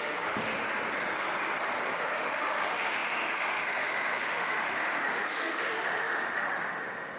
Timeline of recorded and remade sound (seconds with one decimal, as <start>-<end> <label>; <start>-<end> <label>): 0.0-0.5 remade; 0.5-1.9 recorded; 1.9-7.2 remade